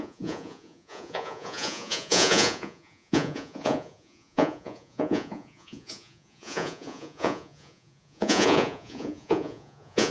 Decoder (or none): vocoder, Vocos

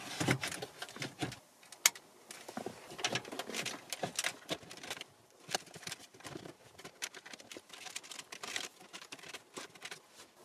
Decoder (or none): none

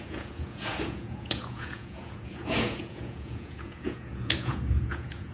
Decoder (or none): vocoder, Vocos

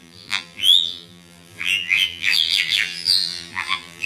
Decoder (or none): vocoder, BigVGAN v2